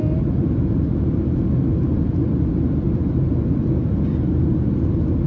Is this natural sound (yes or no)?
yes